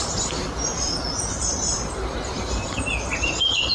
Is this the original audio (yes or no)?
yes